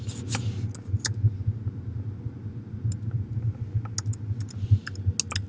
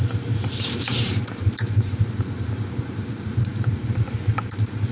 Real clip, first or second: first